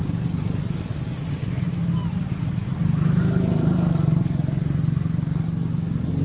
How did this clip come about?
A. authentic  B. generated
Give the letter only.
A